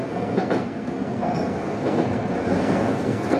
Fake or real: fake